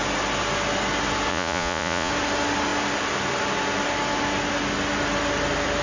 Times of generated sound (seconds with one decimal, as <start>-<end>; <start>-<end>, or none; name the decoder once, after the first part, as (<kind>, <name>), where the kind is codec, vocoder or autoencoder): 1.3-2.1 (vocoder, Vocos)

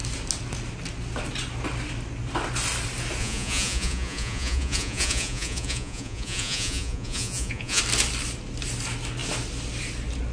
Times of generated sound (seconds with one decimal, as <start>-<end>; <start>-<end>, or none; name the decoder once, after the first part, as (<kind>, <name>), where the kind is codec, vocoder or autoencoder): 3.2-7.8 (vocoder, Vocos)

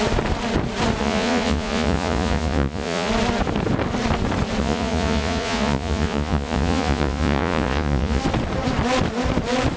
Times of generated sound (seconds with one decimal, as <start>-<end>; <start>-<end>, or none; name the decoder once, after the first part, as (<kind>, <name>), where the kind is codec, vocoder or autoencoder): 1.0-3.1 (vocoder, Vocos); 4.6-8.2

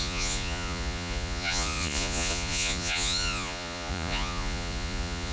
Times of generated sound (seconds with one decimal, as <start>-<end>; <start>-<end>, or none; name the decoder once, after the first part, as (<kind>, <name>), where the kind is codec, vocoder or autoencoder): 0.0-5.3 (vocoder, Vocos)